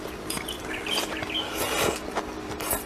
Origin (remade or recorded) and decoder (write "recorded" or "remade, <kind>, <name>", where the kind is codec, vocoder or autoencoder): recorded